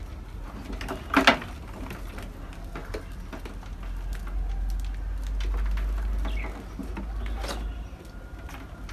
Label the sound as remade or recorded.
recorded